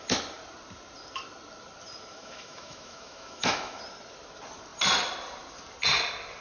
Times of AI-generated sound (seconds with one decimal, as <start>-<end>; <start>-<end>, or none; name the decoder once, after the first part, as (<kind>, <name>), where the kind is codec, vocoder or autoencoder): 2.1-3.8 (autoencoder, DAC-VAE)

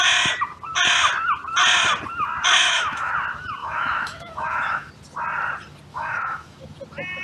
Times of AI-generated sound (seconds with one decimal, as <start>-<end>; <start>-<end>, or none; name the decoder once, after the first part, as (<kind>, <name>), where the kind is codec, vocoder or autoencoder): 2.6-3.1 (autoencoder, DAC-VAE); 3.6-4.9; 5.9-6.6

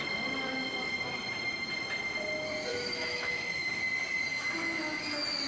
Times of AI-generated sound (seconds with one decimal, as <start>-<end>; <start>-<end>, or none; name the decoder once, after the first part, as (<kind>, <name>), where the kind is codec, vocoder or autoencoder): 0.9-1.7 (autoencoder, DAC-VAE); 2.7-3.8; 4.3-5.0